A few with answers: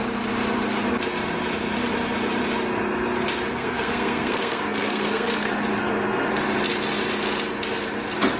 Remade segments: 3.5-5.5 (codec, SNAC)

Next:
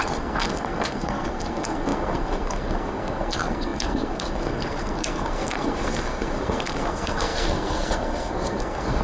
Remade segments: 0.0-9.0 (codec, SNAC)

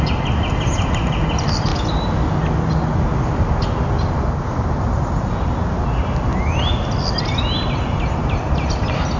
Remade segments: none

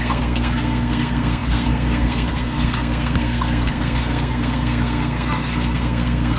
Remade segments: 0.0-6.4 (codec, SNAC)

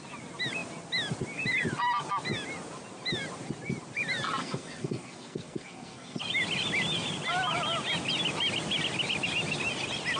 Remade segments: 4.4-6.2 (codec, SNAC)

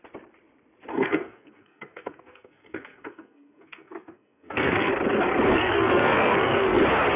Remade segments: 0.9-4.9 (codec, SNAC); 5.5-6.8